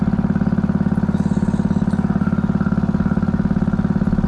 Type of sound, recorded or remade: recorded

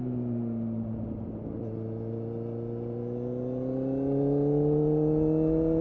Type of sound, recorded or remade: recorded